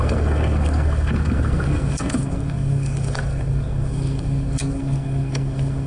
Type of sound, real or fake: fake